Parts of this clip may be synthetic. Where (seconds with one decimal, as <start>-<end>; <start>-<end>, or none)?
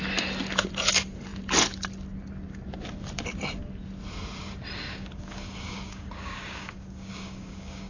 4.9-7.9